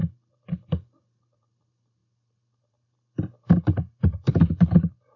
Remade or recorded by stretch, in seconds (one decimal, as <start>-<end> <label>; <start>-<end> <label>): 0.0-5.2 remade